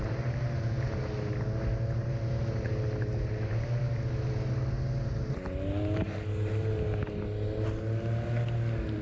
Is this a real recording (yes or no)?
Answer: yes